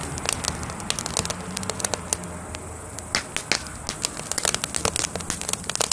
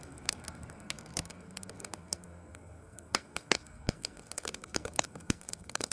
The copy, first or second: second